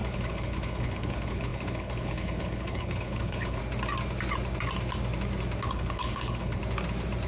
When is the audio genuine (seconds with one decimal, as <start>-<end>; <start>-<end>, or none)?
3.6-5.6; 6.6-7.3